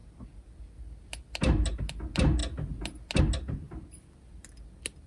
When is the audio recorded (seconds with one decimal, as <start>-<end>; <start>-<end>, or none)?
0.0-5.1